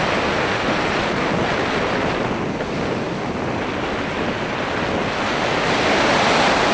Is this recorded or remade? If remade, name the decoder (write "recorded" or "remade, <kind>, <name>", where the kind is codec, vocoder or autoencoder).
recorded